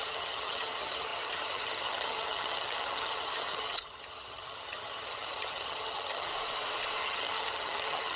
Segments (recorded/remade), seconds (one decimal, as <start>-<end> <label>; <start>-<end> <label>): 0.0-6.3 remade; 6.3-7.0 recorded; 7.0-8.2 remade